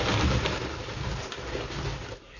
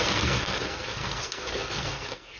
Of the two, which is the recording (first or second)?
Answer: first